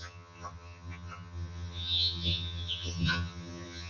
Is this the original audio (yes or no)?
no